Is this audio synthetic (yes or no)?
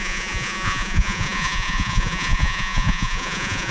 yes